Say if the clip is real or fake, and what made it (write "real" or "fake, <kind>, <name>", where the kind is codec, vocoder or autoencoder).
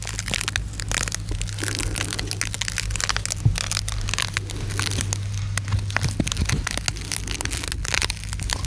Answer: real